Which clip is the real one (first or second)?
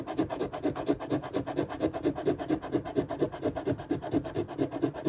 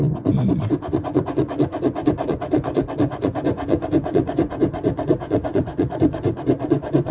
first